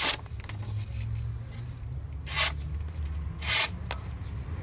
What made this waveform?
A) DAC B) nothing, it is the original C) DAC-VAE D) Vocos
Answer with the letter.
B